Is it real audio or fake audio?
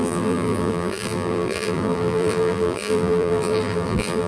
fake